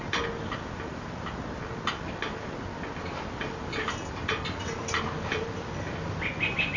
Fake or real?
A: real